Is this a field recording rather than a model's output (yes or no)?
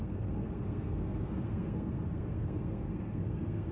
no